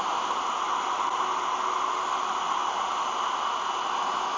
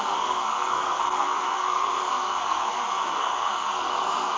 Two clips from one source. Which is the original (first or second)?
first